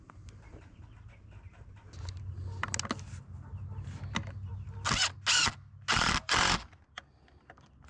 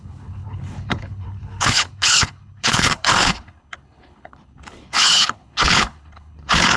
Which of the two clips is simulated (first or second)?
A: second